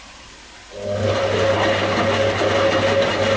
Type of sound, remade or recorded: recorded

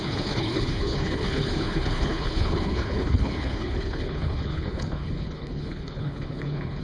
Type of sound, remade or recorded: remade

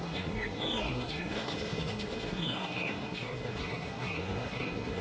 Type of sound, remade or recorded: remade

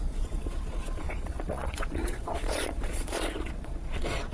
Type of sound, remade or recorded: remade